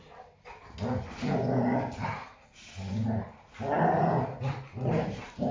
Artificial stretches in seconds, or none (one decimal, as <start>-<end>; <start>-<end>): none